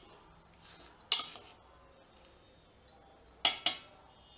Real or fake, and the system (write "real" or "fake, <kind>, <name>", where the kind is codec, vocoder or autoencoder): real